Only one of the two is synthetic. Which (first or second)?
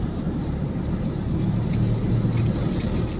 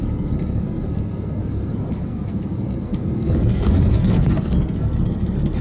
second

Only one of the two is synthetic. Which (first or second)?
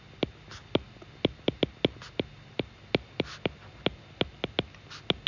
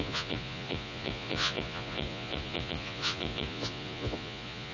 second